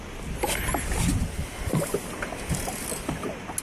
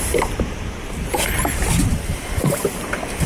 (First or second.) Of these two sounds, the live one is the first